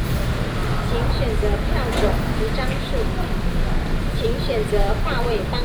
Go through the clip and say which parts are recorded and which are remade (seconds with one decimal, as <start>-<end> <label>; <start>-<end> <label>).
0.0-0.6 remade; 0.6-4.0 recorded; 4.0-5.6 remade